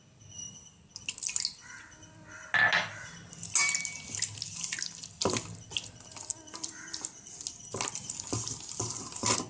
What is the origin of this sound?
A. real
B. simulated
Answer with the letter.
A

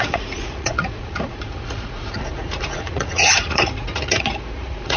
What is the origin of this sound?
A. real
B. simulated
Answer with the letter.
B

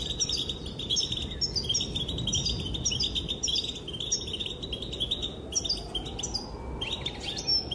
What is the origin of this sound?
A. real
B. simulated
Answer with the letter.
A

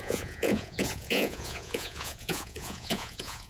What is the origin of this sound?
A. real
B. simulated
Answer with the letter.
B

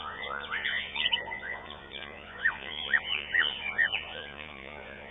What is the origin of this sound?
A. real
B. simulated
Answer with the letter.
B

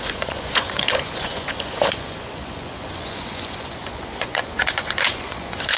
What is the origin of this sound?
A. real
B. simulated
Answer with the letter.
B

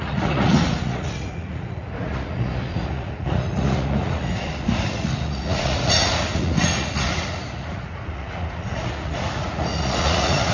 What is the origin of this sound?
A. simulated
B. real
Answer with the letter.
A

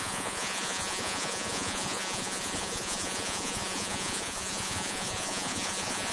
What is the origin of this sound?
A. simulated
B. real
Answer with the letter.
A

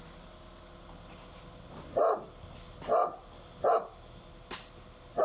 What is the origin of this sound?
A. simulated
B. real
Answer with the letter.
B